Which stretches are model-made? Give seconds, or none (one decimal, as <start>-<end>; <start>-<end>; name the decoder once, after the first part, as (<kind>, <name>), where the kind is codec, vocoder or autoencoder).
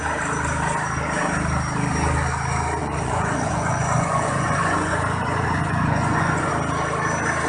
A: 2.8-6.5 (vocoder, Vocos)